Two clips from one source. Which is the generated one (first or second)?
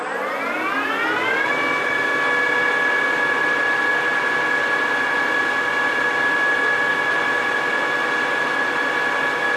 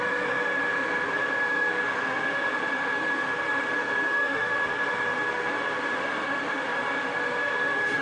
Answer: second